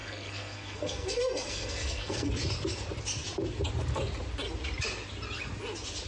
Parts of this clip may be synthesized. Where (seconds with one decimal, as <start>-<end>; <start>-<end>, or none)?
0.0-2.3